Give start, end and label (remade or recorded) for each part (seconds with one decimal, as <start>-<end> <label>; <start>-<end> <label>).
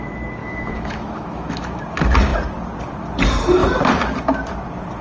0.0-0.4 recorded; 0.4-1.8 remade; 1.8-5.0 recorded